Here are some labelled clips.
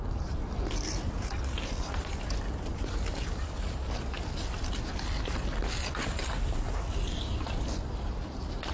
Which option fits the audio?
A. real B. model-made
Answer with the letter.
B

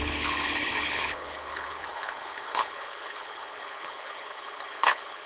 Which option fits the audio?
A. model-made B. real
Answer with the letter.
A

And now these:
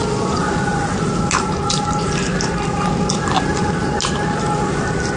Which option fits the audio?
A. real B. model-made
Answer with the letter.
A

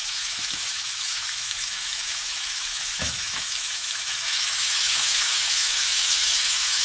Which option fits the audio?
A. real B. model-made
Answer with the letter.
B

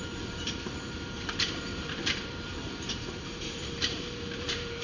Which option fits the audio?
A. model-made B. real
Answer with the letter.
A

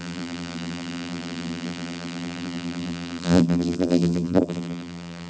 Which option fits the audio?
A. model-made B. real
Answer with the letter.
A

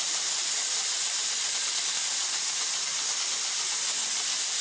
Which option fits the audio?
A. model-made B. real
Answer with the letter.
B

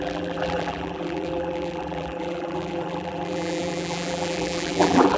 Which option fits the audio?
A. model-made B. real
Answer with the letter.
A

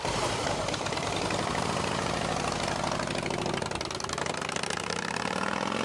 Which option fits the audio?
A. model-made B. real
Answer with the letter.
B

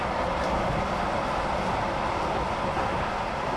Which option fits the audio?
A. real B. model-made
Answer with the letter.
A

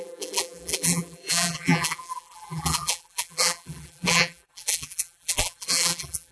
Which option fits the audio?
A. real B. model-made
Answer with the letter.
B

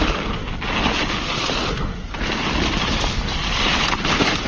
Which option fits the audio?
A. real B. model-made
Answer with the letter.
A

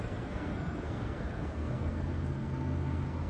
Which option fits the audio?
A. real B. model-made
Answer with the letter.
B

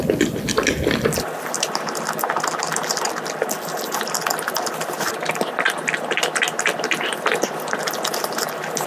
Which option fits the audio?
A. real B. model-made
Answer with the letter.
A